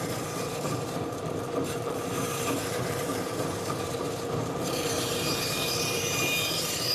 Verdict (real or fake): fake